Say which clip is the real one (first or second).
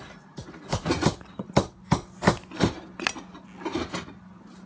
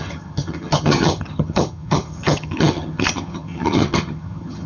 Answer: first